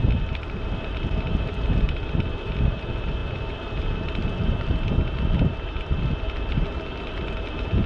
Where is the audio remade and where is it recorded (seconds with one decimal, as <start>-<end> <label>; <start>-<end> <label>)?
0.0-7.9 recorded